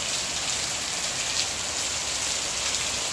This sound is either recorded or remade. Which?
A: recorded